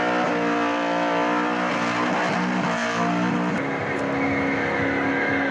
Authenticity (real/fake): real